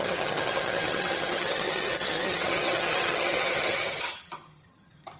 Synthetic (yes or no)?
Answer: yes